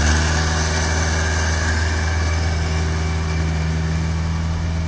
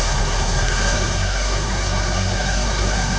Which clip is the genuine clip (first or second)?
first